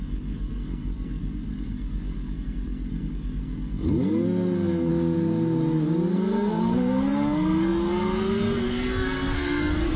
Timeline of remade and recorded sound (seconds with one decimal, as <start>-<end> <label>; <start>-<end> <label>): 0.0-4.9 remade; 4.9-6.1 recorded; 6.1-10.0 remade